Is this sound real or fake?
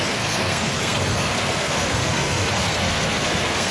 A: fake